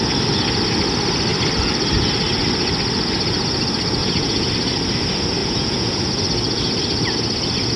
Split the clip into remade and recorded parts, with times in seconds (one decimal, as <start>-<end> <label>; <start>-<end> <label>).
0.0-4.0 recorded; 4.0-4.5 remade; 4.5-5.4 recorded; 5.4-6.1 remade; 6.1-7.8 recorded